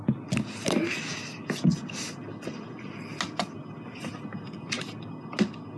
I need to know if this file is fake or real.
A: real